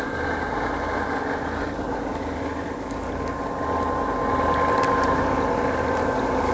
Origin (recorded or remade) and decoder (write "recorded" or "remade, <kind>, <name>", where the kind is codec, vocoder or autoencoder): recorded